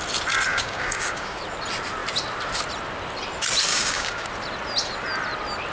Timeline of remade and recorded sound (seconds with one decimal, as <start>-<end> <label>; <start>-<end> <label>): 0.0-0.5 recorded; 0.5-1.4 remade; 1.4-3.7 recorded; 3.7-4.3 remade; 4.3-5.7 recorded